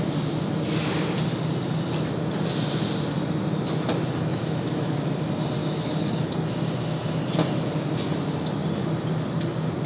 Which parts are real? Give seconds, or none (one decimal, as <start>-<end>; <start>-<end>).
0.0-4.3; 5.1-5.6; 6.3-9.9